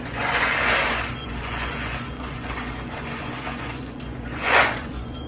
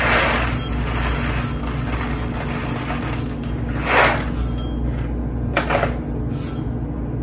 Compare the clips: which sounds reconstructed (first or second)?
first